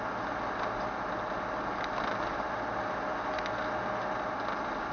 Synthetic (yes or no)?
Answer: no